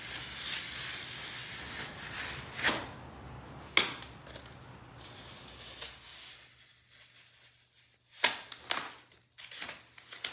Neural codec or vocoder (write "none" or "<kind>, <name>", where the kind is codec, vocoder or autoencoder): none